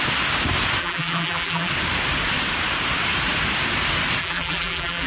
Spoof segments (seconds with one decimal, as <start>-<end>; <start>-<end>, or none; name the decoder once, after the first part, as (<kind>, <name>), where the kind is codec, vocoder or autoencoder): 0.8-1.7 (vocoder, BigVGAN v2); 4.2-5.1